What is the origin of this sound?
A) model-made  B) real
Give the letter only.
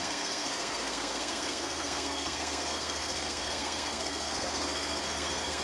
A